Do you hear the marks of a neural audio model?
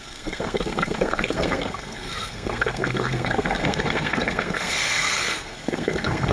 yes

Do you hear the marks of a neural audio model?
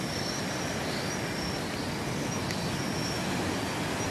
no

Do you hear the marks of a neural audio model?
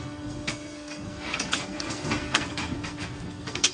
yes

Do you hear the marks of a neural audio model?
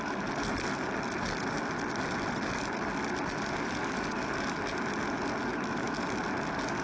no